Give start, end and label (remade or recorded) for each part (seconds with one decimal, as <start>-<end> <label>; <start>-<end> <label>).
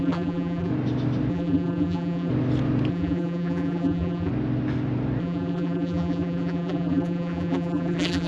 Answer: 0.0-0.7 remade; 0.7-1.3 recorded; 1.3-2.3 remade; 2.3-2.9 recorded; 2.9-4.3 remade; 4.3-5.2 recorded; 5.2-8.3 remade